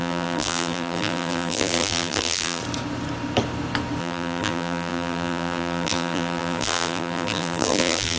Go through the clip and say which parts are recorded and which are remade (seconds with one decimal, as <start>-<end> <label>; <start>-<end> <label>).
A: 0.0-2.6 remade; 2.6-4.0 recorded; 4.0-8.2 remade